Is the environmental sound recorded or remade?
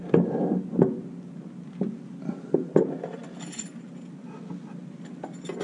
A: recorded